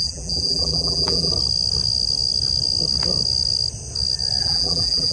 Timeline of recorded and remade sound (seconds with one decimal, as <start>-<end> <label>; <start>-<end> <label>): 0.0-1.3 remade; 1.3-4.4 recorded; 4.4-5.1 remade